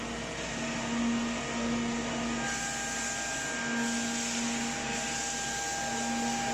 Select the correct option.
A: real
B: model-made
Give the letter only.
A